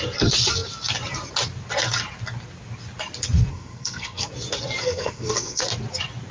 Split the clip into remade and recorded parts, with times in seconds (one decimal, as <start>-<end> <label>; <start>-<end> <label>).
0.0-3.5 recorded; 3.5-4.3 remade; 4.3-4.8 recorded; 4.8-5.6 remade; 5.6-6.3 recorded